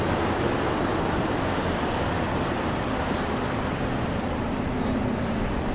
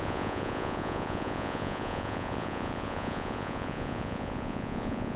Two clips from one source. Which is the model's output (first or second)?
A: second